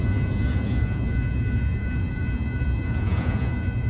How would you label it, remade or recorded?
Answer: remade